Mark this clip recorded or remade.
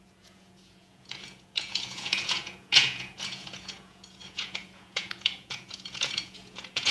remade